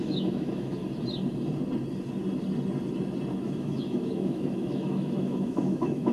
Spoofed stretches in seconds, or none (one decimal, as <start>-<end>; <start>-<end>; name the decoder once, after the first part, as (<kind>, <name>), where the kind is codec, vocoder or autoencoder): 0.0-0.8 (autoencoder, DAC-VAE); 3.4-6.1